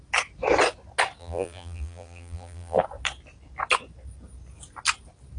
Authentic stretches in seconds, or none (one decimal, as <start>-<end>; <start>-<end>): 0.0-1.2; 2.8-5.4